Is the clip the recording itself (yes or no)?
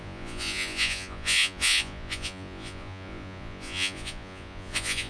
no